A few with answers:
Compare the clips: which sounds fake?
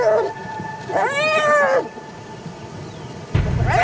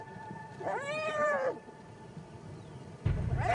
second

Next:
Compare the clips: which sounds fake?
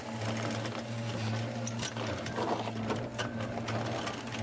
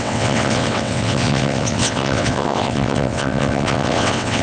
second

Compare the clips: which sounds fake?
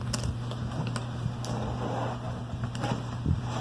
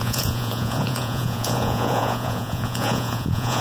second